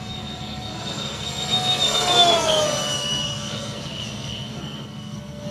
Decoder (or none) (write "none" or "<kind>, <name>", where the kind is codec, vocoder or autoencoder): codec, SNAC